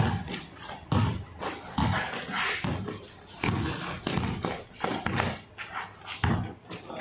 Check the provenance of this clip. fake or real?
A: real